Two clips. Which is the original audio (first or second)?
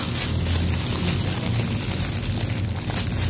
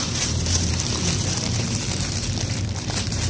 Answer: first